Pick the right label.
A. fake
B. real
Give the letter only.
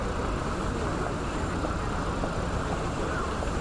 B